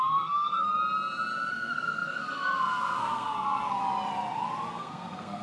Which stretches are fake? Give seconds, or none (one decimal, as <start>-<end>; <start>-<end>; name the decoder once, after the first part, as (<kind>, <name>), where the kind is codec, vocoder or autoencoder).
0.0-0.7 (codec, SNAC); 1.5-3.8; 4.7-5.4